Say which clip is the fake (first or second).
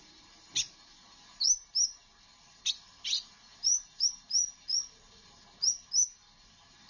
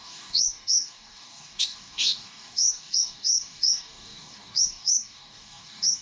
second